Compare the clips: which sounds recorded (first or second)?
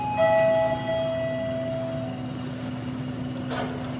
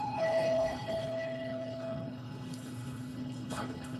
first